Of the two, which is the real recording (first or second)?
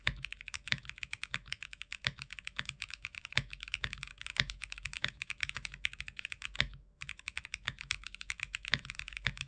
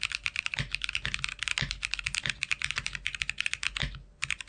second